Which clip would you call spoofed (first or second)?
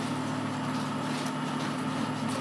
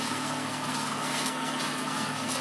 second